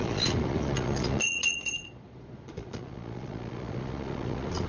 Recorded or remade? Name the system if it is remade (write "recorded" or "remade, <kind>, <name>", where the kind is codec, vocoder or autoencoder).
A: remade, vocoder, Vocos